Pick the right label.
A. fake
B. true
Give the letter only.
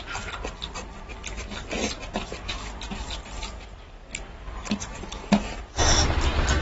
B